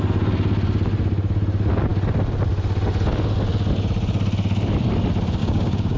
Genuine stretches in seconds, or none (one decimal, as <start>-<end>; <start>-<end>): 0.0-5.4